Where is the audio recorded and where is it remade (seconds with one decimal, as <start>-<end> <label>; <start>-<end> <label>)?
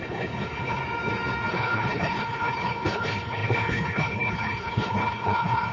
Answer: 0.0-0.8 remade; 0.8-1.5 recorded; 1.5-5.7 remade